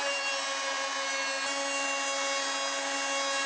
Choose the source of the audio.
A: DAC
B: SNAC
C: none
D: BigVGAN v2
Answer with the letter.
C